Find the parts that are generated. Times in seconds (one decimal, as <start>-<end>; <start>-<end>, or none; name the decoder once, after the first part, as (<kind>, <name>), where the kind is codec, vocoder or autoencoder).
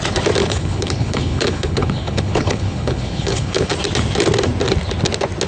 0.4-3.7 (codec, HILCodec)